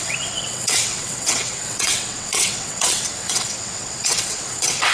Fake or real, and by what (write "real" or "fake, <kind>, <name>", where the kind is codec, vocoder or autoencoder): fake, vocoder, WaveNeXt